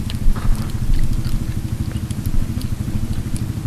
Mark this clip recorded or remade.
recorded